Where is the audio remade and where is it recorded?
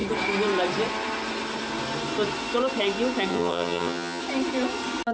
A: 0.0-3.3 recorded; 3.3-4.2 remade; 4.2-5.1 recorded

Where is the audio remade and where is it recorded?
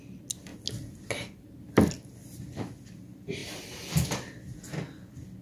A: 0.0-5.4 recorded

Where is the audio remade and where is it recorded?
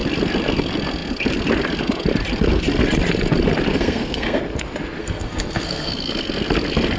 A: 0.0-3.7 recorded; 3.7-4.4 remade; 4.4-5.0 recorded; 5.0-5.9 remade; 5.9-7.0 recorded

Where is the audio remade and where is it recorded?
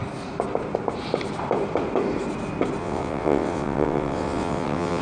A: 0.0-2.8 recorded; 2.8-5.0 remade